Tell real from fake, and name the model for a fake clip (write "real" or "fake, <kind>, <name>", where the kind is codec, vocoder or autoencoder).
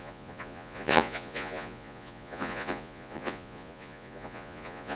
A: fake, vocoder, Vocos